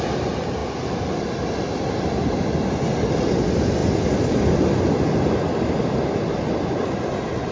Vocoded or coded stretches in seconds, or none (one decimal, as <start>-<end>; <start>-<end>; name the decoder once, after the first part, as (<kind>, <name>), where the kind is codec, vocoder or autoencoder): 0.6-1.7 (vocoder, BigVGAN v2)